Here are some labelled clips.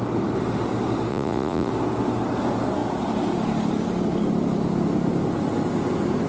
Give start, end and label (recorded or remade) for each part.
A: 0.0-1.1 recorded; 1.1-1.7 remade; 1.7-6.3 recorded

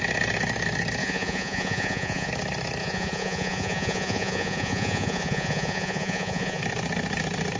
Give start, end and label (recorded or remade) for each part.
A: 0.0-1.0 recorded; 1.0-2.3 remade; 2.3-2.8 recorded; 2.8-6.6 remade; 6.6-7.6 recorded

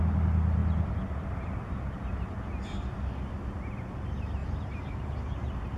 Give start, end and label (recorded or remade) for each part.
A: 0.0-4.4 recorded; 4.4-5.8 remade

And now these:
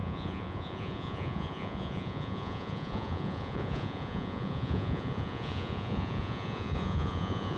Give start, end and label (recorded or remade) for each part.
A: 0.0-7.6 remade

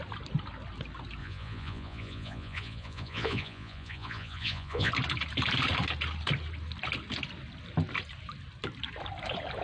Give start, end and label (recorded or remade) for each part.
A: 0.0-1.2 recorded; 1.2-4.9 remade; 4.9-9.6 recorded

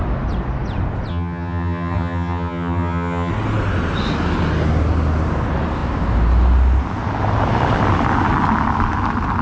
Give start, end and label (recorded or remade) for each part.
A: 0.0-1.1 recorded; 1.1-3.3 remade; 3.3-9.4 recorded

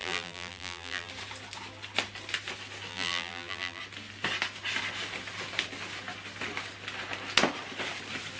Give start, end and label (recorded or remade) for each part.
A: 0.0-1.1 remade; 1.1-2.9 recorded; 2.9-3.8 remade; 3.8-8.4 recorded